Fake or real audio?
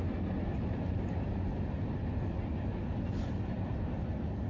real